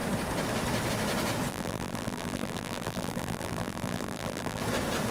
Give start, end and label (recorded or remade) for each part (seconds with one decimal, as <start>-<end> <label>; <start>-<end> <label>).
0.0-1.5 recorded; 1.5-4.6 remade; 4.6-5.1 recorded